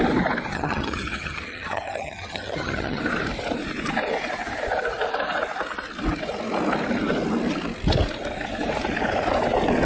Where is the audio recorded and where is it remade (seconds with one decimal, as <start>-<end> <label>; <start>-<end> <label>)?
0.0-0.5 recorded; 0.5-3.0 remade; 3.0-9.8 recorded

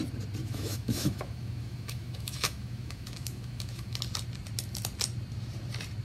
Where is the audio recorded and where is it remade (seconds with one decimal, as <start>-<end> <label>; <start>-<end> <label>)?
0.0-0.4 recorded; 0.4-4.0 remade; 4.0-6.0 recorded

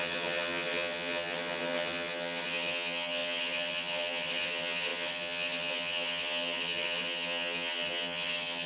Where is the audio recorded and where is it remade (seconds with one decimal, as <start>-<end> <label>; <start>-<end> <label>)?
0.0-8.7 remade

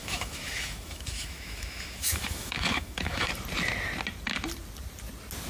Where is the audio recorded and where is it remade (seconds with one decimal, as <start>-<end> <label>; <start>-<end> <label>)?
0.0-3.3 remade; 3.3-5.5 recorded

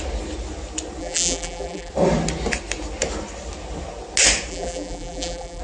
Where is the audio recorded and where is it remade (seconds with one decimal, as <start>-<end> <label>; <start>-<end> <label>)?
0.0-1.0 recorded; 1.0-1.9 remade; 1.9-4.5 recorded; 4.5-5.6 remade

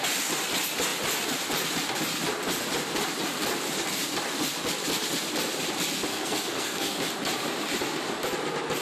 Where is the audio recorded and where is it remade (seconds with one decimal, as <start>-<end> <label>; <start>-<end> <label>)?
0.0-6.1 recorded; 6.1-7.0 remade; 7.0-8.8 recorded